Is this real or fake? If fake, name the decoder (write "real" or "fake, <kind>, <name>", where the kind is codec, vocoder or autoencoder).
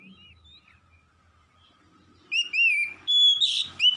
real